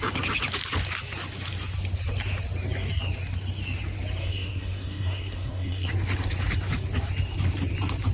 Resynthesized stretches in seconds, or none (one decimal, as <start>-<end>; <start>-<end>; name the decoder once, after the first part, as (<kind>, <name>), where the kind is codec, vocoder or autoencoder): 4.2-5.9 (codec, SNAC)